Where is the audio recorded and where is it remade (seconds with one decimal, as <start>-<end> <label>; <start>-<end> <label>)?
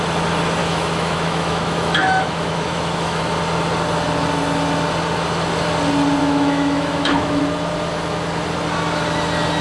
0.0-0.6 recorded; 0.6-3.2 remade; 3.2-6.2 recorded; 6.2-7.4 remade; 7.4-9.6 recorded